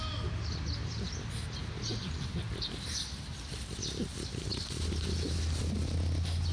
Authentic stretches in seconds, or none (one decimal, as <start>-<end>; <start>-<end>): 0.0-6.5